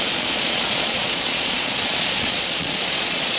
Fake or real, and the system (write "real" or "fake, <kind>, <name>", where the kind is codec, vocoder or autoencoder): fake, vocoder, Vocos